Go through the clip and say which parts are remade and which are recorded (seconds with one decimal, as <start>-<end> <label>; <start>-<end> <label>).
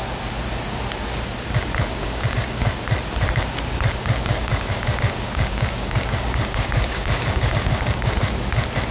0.0-2.0 recorded; 2.0-2.7 remade; 2.7-4.0 recorded; 4.0-8.1 remade; 8.1-8.9 recorded